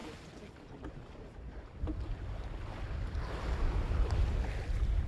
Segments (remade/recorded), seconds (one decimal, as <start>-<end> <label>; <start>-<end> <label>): 0.0-0.6 recorded; 0.6-1.7 remade; 1.7-5.1 recorded